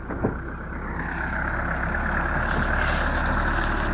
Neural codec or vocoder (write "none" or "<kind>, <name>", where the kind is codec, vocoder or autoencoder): none